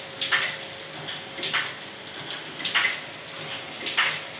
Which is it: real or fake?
real